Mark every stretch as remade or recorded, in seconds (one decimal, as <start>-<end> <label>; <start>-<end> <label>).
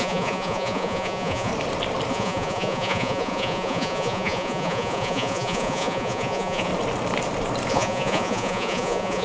0.0-1.5 remade; 1.5-2.1 recorded; 2.1-6.7 remade; 6.7-7.7 recorded; 7.7-9.2 remade